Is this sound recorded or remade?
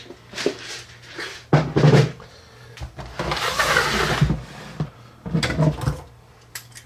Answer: recorded